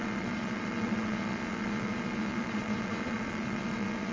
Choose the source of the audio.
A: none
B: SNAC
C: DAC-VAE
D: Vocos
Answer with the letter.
D